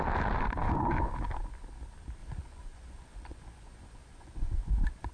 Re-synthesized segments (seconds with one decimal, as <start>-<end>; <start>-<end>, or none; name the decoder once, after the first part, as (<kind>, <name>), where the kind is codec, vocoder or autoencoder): 2.2-5.1 (vocoder, Vocos)